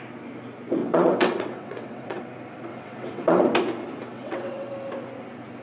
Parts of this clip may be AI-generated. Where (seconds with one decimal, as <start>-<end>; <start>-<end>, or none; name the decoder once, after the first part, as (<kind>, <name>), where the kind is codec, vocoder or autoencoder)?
0.8-2.2 (vocoder, WaveNeXt); 2.7-3.4; 4.1-4.7